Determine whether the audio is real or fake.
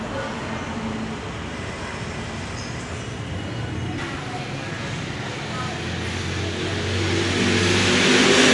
real